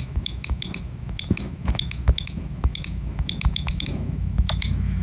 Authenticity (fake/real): fake